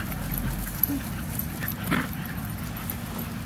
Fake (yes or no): no